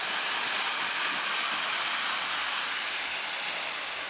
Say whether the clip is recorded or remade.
recorded